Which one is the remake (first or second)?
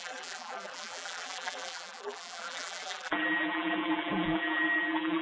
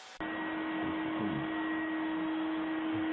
first